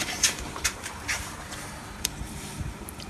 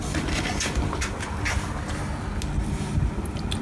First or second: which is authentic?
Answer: second